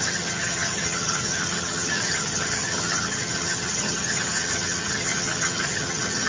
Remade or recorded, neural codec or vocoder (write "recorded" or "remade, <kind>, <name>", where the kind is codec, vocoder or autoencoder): remade, vocoder, HiFi-GAN